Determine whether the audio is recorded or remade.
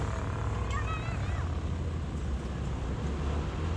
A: recorded